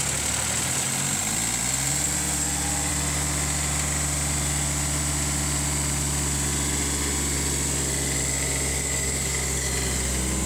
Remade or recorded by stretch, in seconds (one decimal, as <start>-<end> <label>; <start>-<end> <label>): 0.0-8.7 recorded; 8.7-9.7 remade; 9.7-10.5 recorded